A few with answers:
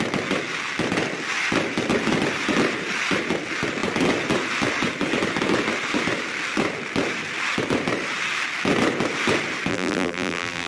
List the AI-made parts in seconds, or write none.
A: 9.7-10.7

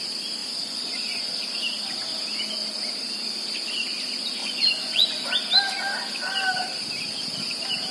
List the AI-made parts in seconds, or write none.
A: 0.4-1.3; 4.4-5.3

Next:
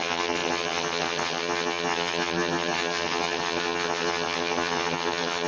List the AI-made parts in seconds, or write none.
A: 0.0-5.5

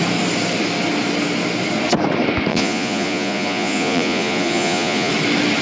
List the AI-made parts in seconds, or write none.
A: 2.5-5.1

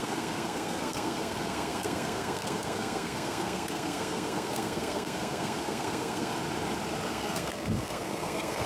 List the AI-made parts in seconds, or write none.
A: 0.0-6.3; 7.1-8.7

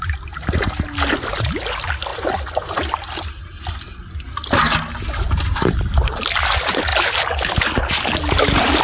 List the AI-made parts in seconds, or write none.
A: none